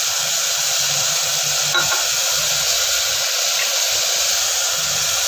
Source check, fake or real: real